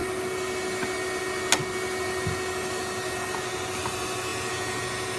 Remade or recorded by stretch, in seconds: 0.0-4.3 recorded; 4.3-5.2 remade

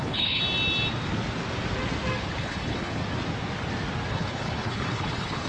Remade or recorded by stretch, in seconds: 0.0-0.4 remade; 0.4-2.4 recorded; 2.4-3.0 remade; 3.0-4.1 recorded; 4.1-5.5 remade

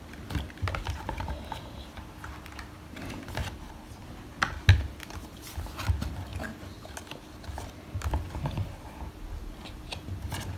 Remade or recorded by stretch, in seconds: 0.0-10.6 recorded

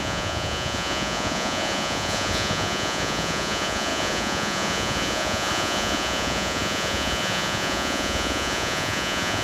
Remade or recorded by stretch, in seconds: 0.0-9.4 remade